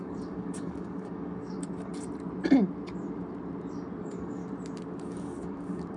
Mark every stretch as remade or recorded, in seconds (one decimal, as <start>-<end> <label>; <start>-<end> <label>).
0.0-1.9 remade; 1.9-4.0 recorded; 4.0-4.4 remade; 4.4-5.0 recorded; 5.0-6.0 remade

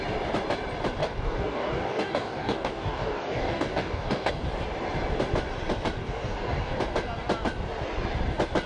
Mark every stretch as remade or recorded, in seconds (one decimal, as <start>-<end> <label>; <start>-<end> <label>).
0.0-1.0 recorded; 1.0-4.3 remade; 4.3-6.0 recorded; 6.0-6.7 remade; 6.7-8.7 recorded

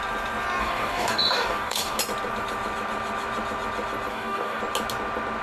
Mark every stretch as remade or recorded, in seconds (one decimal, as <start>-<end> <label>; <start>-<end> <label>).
0.0-0.6 recorded; 0.6-2.0 remade; 2.0-4.1 recorded; 4.1-4.6 remade; 4.6-5.4 recorded